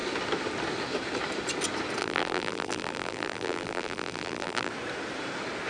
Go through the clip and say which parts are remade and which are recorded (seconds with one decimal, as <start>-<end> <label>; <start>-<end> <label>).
0.0-2.0 recorded; 2.0-4.7 remade; 4.7-5.7 recorded